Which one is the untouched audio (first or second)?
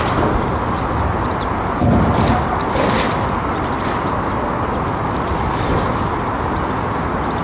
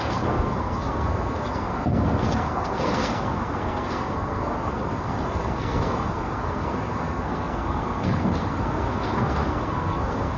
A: first